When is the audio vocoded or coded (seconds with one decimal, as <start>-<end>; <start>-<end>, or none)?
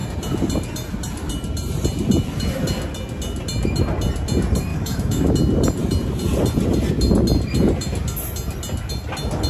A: 4.7-5.3